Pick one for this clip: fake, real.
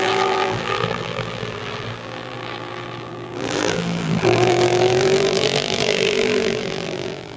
fake